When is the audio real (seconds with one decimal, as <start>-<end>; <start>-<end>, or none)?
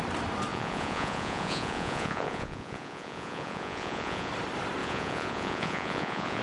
0.0-0.5; 4.3-4.8